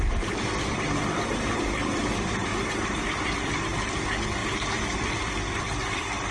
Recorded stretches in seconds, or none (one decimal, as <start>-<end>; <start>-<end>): 2.5-3.2; 4.4-5.1